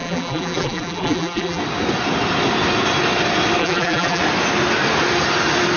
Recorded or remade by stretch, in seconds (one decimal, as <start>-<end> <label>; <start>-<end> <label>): 0.0-1.6 remade; 1.6-3.6 recorded; 3.6-4.2 remade; 4.2-5.8 recorded